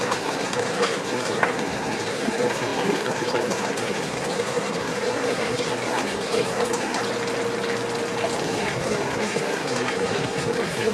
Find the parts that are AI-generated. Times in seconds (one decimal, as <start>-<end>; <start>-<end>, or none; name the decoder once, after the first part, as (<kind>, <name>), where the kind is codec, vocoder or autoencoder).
0.0-7.0 (codec, SNAC); 8.4-10.9